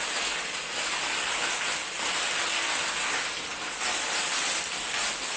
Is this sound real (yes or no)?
yes